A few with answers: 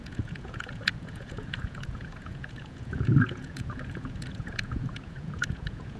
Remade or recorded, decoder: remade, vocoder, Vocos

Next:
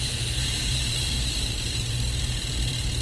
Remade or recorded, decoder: remade, vocoder, BigVGAN v2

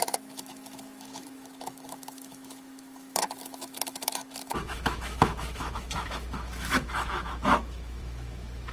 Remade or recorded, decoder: remade, autoencoder, DAC-VAE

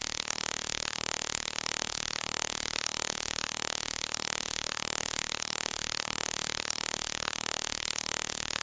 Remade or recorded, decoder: remade, codec, HILCodec